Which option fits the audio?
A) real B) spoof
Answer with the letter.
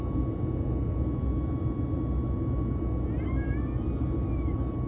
A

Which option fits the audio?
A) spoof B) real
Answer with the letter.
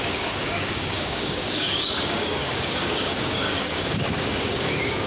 A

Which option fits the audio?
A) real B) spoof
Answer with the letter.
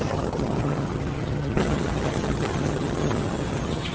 B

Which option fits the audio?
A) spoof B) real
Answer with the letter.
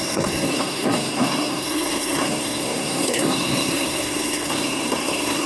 A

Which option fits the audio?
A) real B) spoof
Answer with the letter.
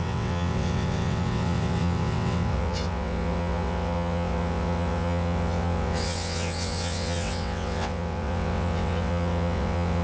B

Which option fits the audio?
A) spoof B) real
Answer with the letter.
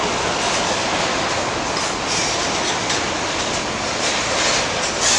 B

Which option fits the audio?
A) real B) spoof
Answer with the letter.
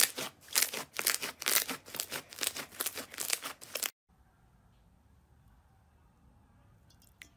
A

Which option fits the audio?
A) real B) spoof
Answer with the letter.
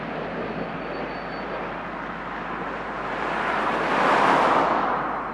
A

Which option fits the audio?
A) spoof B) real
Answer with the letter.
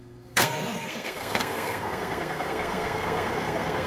A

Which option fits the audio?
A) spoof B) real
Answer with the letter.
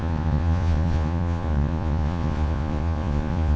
A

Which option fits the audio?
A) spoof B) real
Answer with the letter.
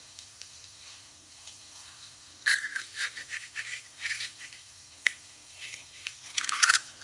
A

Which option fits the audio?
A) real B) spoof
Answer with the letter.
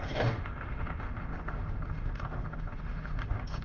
B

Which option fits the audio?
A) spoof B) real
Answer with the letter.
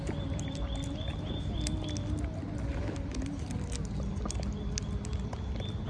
B